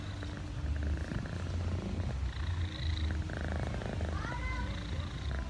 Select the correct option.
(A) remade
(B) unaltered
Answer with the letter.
B